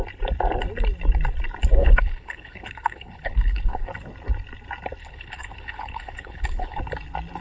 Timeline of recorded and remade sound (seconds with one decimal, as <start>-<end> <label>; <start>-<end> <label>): 0.0-1.8 recorded; 1.8-3.9 remade; 3.9-5.0 recorded; 5.0-6.8 remade; 6.8-7.4 recorded